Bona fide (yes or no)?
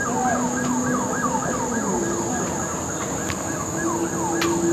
yes